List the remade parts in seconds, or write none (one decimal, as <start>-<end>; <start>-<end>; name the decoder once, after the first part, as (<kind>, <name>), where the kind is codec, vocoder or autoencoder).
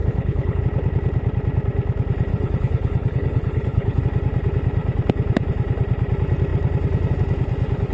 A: 0.0-0.6 (codec, HILCodec); 2.3-4.0